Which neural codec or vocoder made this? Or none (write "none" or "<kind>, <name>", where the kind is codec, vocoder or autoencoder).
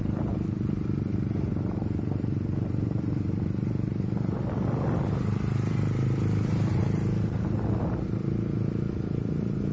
none